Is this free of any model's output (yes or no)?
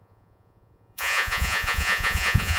no